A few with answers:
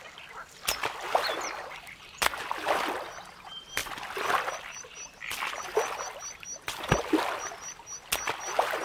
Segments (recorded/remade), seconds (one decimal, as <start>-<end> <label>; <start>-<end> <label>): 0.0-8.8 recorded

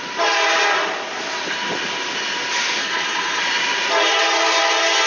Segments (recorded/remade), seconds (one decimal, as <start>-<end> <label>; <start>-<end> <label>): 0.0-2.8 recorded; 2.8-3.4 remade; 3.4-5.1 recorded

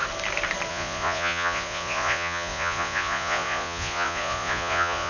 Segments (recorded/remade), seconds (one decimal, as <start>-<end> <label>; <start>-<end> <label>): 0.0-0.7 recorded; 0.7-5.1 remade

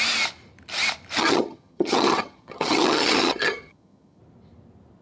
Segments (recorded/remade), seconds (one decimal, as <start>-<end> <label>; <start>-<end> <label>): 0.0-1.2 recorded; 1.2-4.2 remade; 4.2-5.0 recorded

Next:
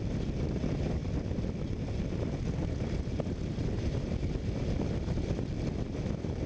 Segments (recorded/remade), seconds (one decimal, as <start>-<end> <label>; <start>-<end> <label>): 0.0-6.5 remade